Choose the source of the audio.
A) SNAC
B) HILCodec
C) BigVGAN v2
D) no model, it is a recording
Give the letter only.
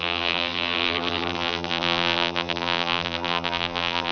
C